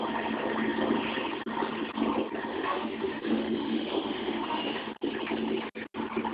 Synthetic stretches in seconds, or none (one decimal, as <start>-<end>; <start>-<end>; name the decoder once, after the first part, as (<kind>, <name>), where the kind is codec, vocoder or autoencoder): 2.5-4.9 (autoencoder, DAC-VAE)